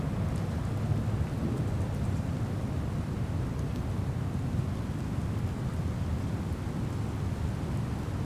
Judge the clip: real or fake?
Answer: real